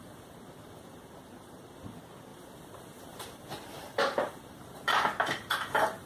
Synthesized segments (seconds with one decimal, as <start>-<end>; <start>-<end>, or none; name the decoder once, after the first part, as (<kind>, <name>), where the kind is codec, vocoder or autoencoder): 0.0-6.1 (vocoder, BigVGAN v2)